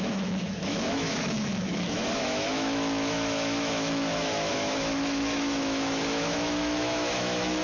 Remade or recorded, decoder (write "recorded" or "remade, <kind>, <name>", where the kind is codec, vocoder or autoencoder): remade, autoencoder, DAC-VAE